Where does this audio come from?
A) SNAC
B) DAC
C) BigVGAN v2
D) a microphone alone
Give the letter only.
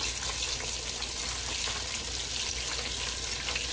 D